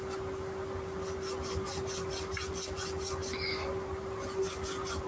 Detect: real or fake real